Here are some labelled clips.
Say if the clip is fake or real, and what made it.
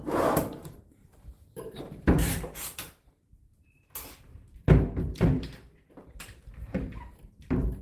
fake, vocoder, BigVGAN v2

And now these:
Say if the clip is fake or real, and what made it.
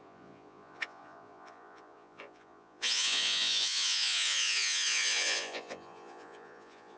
fake, vocoder, Vocos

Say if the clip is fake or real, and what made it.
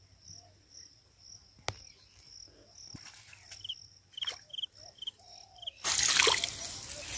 real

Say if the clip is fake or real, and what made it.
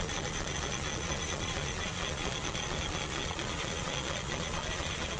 fake, vocoder, Vocos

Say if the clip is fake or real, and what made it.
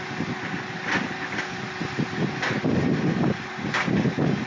real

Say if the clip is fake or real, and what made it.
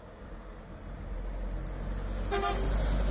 real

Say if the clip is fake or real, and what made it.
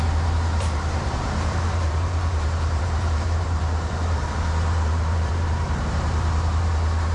fake, vocoder, BigVGAN v2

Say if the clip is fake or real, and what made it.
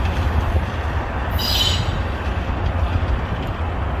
real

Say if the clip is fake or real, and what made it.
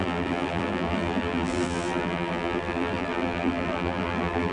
fake, vocoder, BigVGAN v2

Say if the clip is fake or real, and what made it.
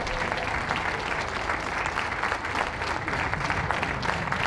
real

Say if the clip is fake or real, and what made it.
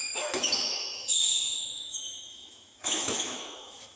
fake, autoencoder, DAC-VAE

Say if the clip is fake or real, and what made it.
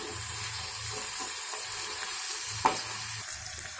real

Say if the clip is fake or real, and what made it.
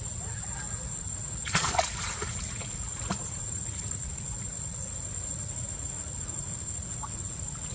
fake, vocoder, Vocos